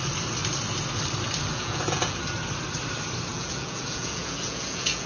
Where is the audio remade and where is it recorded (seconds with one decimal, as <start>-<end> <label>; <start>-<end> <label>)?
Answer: 0.0-1.5 recorded; 1.5-2.2 remade; 2.2-3.3 recorded; 3.3-5.1 remade

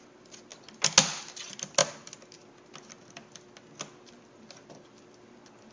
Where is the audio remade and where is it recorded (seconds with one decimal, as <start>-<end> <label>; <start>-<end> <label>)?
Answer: 0.0-5.7 recorded

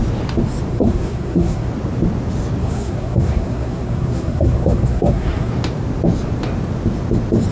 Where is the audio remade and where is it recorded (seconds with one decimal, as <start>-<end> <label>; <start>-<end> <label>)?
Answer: 0.0-0.7 recorded; 0.7-1.7 remade; 1.7-2.6 recorded; 2.6-5.5 remade; 5.5-7.5 recorded

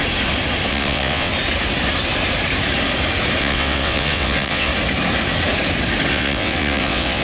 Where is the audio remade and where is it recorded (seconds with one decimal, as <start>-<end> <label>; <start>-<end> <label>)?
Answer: 0.0-0.7 recorded; 0.7-1.3 remade; 1.3-3.4 recorded; 3.4-4.7 remade; 4.7-6.1 recorded; 6.1-7.2 remade

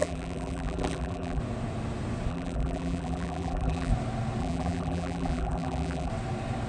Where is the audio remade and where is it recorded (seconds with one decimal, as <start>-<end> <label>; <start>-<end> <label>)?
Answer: 0.0-1.4 remade; 1.4-2.3 recorded; 2.3-3.9 remade; 3.9-4.4 recorded; 4.4-6.1 remade; 6.1-6.7 recorded

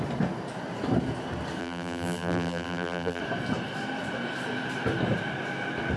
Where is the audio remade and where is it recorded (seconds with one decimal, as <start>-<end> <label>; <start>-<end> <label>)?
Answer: 0.0-1.6 recorded; 1.6-3.2 remade; 3.2-6.0 recorded

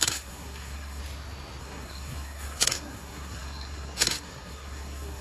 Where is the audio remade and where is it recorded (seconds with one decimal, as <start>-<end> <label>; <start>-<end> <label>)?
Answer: 0.0-1.0 remade; 1.0-1.6 recorded; 1.6-5.2 remade